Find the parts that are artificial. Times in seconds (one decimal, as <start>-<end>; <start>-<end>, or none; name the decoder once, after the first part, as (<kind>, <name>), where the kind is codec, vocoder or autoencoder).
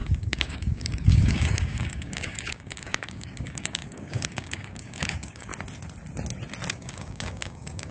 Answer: 0.0-5.5 (codec, DAC); 6.7-7.9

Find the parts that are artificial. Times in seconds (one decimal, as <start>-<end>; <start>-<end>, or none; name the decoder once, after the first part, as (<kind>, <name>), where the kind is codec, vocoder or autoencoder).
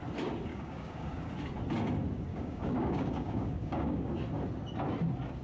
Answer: 0.5-1.3 (codec, DAC); 2.3-4.1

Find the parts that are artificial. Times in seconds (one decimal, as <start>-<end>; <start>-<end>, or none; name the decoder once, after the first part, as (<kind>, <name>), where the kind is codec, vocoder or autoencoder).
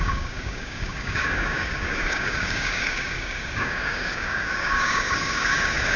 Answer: 0.0-6.0 (codec, DAC)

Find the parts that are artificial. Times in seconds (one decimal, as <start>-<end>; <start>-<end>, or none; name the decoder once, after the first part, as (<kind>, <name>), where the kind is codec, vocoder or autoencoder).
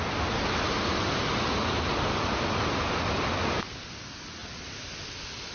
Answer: none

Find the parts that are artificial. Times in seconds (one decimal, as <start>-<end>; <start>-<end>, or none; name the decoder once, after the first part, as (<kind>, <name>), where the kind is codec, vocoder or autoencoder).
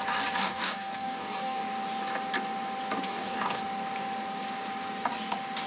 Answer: 0.4-1.6 (codec, DAC); 3.1-3.6